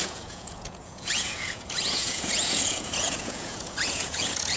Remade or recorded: remade